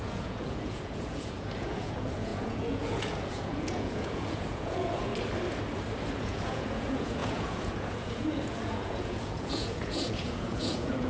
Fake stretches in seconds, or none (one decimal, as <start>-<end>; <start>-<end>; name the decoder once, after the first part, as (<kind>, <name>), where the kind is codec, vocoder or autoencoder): 0.0-5.1 (vocoder, Vocos); 6.2-11.1